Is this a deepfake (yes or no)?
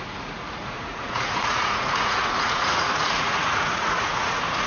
yes